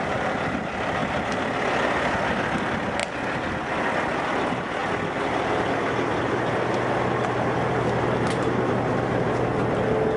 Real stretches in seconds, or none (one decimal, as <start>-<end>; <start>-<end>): 0.0-10.2